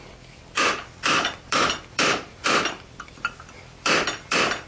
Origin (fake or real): fake